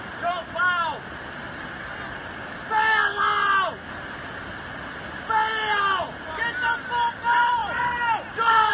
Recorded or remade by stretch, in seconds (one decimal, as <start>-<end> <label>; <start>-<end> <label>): 0.0-8.7 recorded